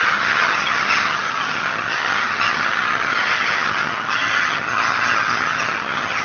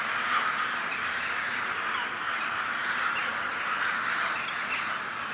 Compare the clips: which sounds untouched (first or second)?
second